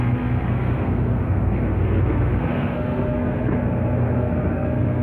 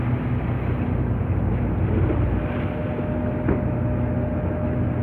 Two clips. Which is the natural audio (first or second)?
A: second